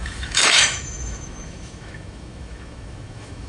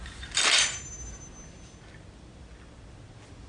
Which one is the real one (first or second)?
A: second